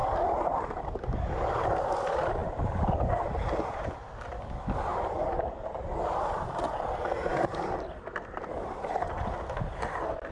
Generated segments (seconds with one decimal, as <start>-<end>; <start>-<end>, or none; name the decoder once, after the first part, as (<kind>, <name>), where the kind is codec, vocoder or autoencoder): 4.9-6.6 (vocoder, BigVGAN v2); 7.3-9.4